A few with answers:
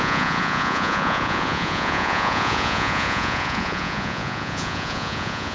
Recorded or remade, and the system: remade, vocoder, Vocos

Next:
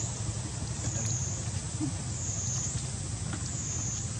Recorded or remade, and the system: recorded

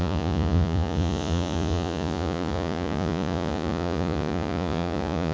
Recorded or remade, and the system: remade, vocoder, Vocos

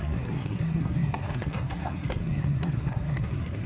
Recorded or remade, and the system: remade, codec, SNAC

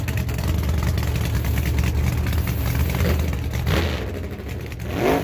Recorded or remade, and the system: recorded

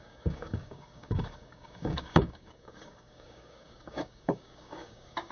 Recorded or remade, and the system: remade, codec, DAC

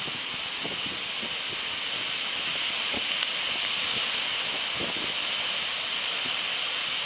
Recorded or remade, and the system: recorded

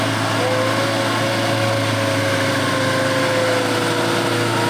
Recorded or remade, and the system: recorded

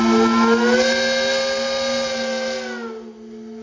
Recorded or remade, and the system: recorded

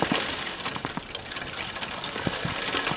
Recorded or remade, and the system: recorded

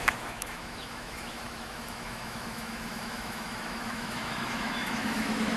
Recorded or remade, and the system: remade, autoencoder, DAC-VAE